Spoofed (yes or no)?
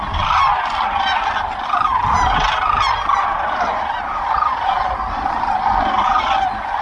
no